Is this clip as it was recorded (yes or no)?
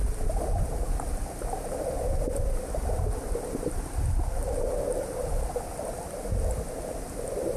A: yes